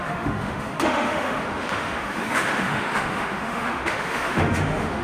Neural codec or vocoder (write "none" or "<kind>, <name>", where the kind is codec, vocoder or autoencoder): autoencoder, DAC-VAE